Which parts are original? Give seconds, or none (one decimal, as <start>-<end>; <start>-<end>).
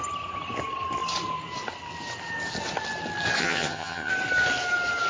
0.0-3.4; 4.1-5.1